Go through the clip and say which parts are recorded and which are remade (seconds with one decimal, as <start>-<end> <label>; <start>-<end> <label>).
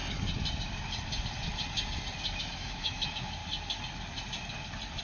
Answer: 0.0-2.4 recorded; 2.4-3.4 remade; 3.4-5.0 recorded